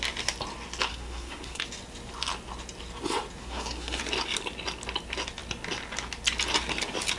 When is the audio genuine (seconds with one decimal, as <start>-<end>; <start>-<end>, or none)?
0.0-0.9; 1.6-3.4; 4.0-7.2